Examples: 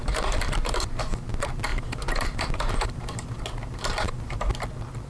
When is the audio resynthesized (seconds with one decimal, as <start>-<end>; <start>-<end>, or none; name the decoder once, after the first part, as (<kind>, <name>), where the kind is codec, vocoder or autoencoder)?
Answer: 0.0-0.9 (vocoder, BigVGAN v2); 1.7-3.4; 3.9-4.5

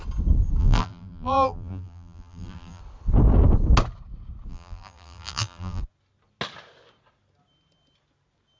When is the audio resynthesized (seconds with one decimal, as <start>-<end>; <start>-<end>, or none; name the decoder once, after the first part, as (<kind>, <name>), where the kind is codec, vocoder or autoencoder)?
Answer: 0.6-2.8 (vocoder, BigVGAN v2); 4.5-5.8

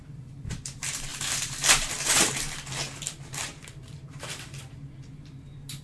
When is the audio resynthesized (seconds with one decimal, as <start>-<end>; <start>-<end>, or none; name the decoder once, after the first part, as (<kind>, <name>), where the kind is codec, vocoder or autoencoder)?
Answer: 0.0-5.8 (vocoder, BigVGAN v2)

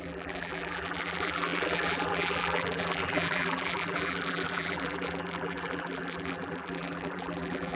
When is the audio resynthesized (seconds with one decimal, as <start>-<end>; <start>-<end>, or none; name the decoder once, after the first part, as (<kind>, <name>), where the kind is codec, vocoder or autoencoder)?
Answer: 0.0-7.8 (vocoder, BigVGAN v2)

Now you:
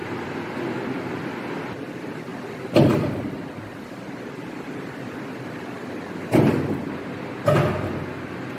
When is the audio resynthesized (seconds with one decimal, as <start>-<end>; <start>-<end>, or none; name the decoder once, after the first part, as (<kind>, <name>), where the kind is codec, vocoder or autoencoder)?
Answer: 0.0-2.3 (vocoder, BigVGAN v2); 3.6-5.8